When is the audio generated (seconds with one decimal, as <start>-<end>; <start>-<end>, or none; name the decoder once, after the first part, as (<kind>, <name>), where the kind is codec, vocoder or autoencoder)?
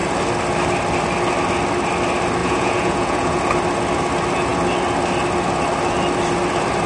2.4-3.4 (vocoder, Vocos)